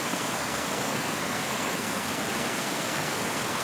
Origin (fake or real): fake